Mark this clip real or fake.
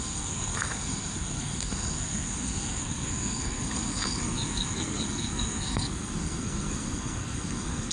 fake